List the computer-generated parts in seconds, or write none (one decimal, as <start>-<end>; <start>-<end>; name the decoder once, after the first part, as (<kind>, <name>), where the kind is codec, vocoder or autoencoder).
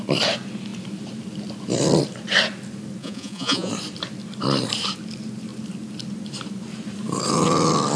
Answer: 3.0-3.7 (vocoder, Vocos)